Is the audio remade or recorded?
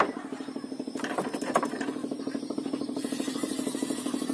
remade